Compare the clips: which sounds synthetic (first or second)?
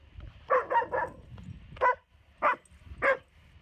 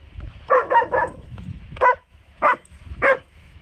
second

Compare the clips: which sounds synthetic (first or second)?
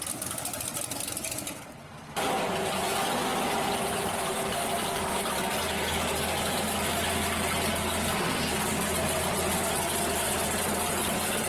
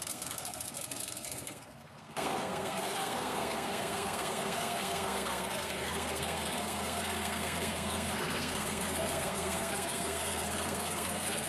second